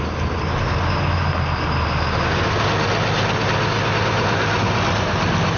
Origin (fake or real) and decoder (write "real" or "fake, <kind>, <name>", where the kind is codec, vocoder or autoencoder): real